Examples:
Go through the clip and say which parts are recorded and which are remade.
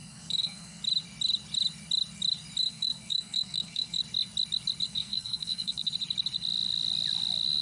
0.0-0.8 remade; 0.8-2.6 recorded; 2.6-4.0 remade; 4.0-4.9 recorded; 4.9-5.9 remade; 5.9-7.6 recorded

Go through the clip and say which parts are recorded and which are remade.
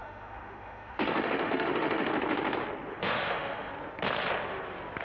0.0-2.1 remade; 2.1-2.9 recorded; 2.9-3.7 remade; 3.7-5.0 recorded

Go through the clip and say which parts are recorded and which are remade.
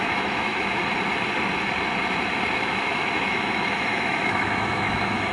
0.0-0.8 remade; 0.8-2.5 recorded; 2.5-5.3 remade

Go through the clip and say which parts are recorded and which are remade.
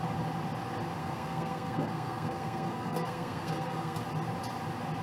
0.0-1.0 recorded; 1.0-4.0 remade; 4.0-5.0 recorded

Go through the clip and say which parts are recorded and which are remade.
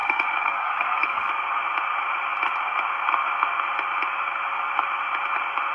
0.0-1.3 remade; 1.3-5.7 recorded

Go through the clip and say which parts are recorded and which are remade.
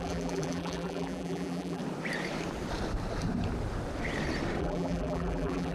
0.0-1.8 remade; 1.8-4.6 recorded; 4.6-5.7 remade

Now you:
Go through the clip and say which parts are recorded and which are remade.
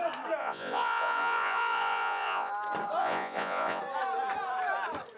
0.0-0.4 recorded; 0.4-2.5 remade; 2.5-3.0 recorded; 3.0-3.8 remade; 3.8-5.2 recorded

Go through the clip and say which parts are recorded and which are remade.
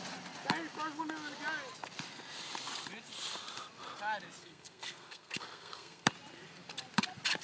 0.0-4.4 recorded; 4.4-6.1 remade; 6.1-7.4 recorded